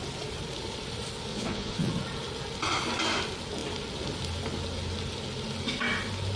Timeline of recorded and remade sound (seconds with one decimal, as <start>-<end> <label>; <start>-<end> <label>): 0.0-1.3 recorded; 1.3-1.9 remade; 1.9-6.4 recorded

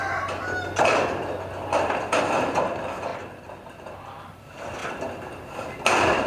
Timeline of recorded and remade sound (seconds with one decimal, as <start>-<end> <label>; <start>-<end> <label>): 0.0-6.3 recorded

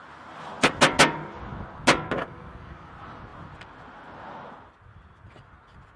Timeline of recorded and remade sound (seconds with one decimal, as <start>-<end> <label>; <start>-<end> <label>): 0.0-2.2 recorded; 2.2-2.9 remade; 2.9-6.0 recorded